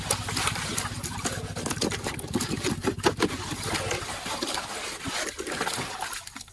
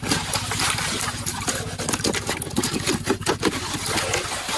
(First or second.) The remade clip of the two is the first